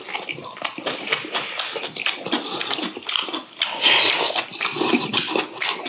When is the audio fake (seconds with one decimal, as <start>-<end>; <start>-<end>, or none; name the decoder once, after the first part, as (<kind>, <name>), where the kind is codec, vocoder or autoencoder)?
none